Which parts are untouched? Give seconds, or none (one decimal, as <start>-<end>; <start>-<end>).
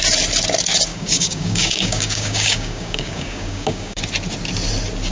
0.0-0.9; 4.0-5.1